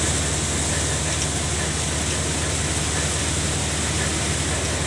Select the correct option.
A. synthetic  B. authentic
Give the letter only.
B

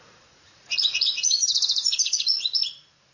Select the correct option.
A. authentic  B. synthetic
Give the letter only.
B